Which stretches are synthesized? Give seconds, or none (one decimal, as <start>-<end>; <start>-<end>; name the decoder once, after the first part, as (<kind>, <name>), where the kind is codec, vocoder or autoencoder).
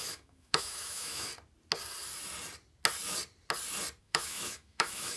0.0-1.3 (autoencoder, DAC-VAE); 4.0-5.2